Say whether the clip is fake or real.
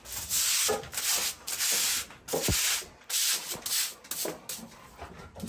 real